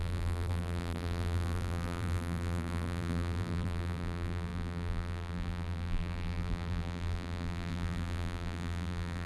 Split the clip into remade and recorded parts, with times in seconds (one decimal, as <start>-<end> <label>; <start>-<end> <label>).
0.0-9.3 remade